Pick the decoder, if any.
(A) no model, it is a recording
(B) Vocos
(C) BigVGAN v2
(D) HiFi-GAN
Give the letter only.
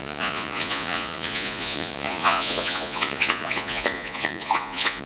B